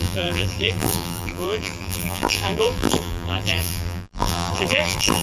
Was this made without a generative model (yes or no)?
no